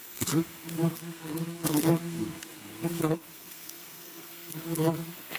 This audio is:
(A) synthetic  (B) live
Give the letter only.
A